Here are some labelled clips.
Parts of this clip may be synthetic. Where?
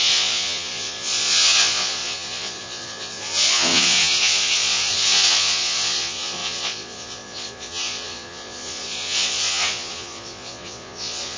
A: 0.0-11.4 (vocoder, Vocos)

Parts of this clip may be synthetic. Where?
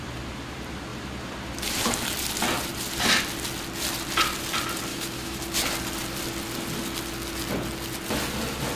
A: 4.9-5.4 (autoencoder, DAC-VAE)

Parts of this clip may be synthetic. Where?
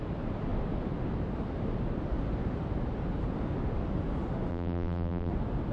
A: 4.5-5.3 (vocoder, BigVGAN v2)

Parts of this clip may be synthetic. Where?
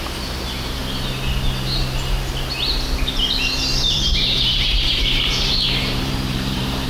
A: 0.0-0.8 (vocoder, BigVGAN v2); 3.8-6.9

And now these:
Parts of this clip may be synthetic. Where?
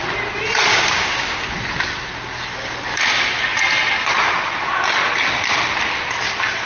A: 0.7-1.5 (codec, DAC)